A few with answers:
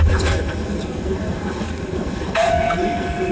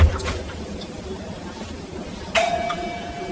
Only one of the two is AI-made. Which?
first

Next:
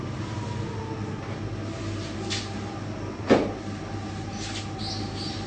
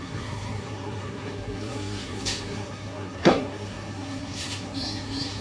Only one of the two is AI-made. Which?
second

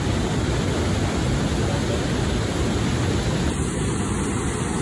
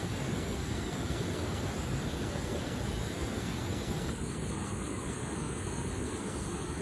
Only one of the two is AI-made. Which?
second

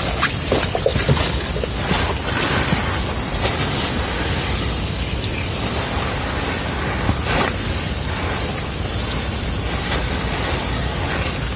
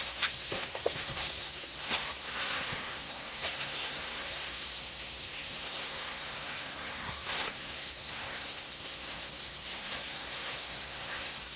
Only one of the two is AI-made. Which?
second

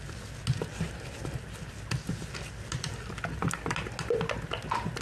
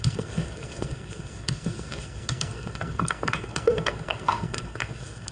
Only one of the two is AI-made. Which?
second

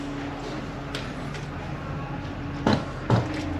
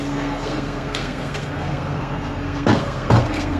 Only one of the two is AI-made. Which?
second